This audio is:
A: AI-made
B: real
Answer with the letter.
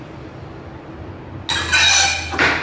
B